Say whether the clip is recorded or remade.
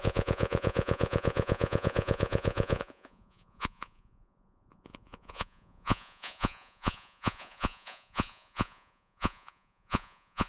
remade